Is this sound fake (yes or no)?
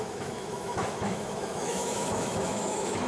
yes